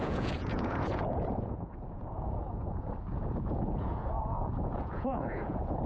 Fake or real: fake